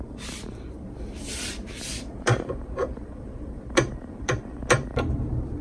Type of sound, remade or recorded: remade